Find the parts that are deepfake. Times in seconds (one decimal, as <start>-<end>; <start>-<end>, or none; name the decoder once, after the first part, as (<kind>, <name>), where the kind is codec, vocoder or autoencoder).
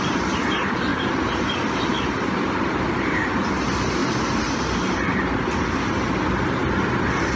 0.9-3.3 (vocoder, BigVGAN v2); 4.0-5.9